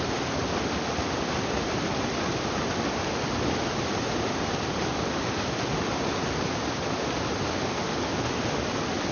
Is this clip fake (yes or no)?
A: no